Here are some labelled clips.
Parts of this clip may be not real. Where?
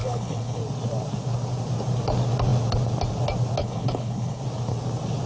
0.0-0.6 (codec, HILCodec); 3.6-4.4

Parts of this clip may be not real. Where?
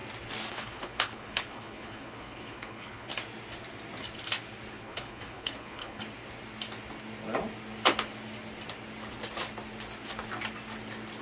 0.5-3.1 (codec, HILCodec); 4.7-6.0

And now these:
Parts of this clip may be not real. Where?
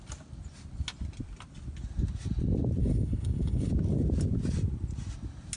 2.8-3.7 (codec, HILCodec)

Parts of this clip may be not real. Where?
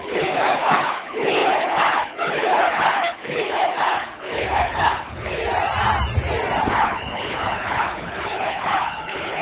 0.0-5.4 (codec, HILCodec); 6.7-9.4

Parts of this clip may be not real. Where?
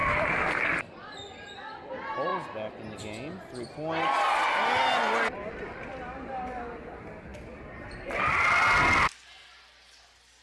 none